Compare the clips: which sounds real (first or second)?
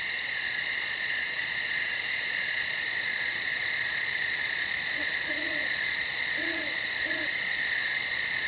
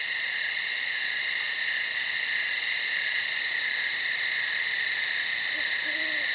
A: second